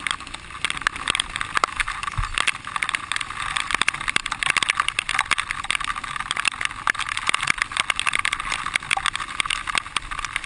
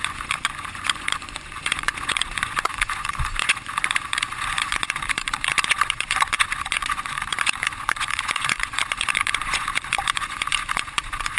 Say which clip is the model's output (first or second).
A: second